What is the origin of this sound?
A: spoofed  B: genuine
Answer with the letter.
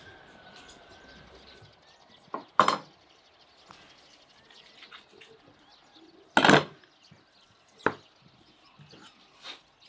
B